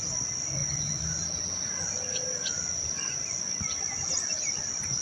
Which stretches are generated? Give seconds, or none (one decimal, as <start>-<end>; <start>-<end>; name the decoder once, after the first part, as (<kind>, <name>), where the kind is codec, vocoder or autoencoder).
none